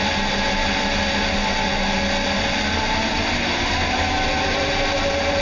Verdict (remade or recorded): recorded